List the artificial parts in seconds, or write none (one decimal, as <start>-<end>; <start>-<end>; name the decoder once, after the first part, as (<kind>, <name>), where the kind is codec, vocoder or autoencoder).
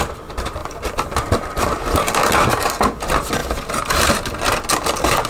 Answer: none